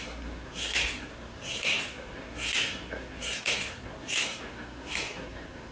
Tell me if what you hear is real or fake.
fake